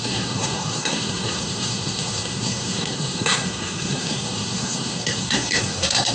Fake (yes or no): yes